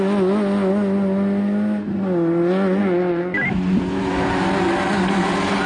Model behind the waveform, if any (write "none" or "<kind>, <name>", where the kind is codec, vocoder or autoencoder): none